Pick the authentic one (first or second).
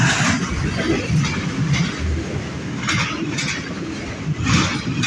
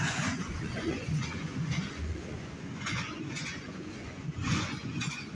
first